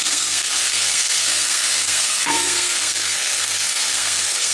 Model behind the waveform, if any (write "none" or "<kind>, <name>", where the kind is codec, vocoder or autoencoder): codec, SNAC